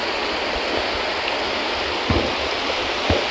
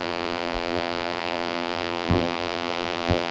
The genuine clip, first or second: first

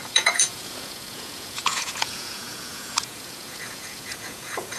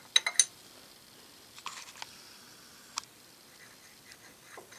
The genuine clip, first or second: second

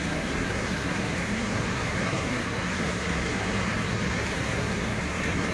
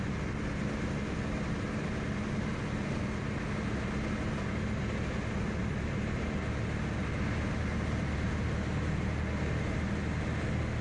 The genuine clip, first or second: second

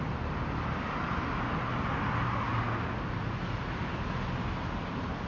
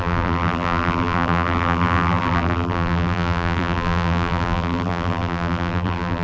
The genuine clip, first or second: first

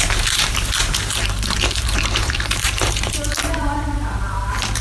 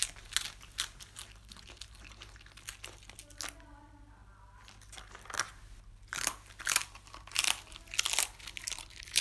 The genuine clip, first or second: second